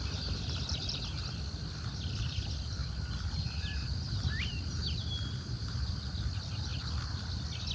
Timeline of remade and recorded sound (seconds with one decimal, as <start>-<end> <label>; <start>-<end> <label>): 0.0-7.7 recorded